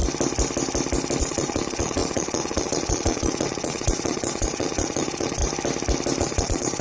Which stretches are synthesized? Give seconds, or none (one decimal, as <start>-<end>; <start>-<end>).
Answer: 1.2-5.4; 6.2-6.8